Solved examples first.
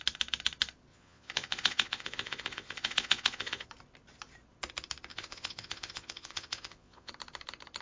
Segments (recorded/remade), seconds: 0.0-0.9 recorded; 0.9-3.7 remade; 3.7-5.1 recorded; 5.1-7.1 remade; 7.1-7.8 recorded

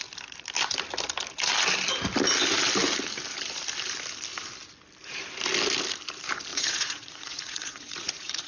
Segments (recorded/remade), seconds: 0.0-6.5 recorded; 6.5-8.5 remade

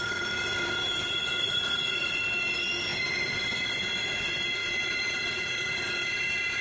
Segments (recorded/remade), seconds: 0.0-1.0 recorded; 1.0-2.2 remade; 2.2-6.6 recorded

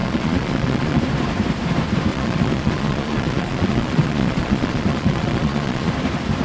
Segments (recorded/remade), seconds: 0.0-1.0 remade; 1.0-2.1 recorded; 2.1-5.9 remade; 5.9-6.4 recorded

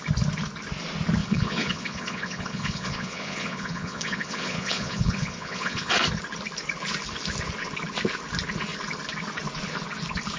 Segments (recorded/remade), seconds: 0.0-1.2 recorded; 1.2-5.9 remade; 5.9-10.4 recorded